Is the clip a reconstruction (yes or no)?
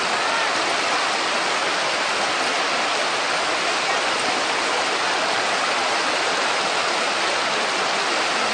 no